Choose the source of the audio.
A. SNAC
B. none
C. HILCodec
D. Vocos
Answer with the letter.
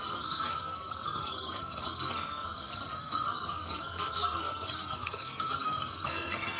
A